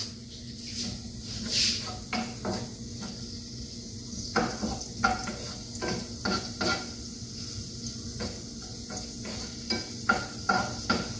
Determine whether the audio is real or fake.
real